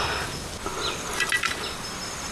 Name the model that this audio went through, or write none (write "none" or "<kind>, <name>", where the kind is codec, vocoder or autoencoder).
none